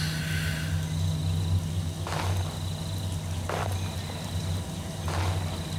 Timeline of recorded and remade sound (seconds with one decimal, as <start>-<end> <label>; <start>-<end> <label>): 0.0-5.8 recorded